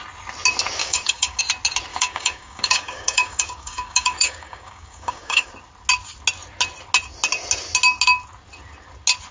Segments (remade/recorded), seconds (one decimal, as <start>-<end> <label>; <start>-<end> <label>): 0.0-0.8 recorded; 0.8-1.4 remade; 1.4-1.9 recorded; 1.9-5.5 remade; 5.5-9.3 recorded